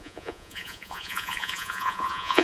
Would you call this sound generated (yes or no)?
yes